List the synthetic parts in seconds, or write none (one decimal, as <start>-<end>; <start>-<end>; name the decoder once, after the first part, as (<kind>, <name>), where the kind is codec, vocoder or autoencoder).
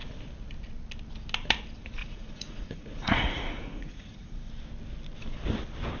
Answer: 2.0-4.5 (vocoder, Vocos)